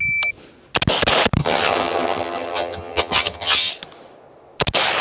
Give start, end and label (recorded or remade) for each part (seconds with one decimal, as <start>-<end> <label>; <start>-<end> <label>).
0.0-1.4 recorded; 1.4-3.7 remade; 3.7-5.0 recorded